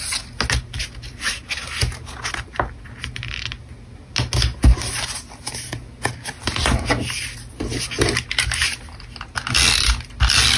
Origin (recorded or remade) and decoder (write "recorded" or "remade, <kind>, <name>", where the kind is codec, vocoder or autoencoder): recorded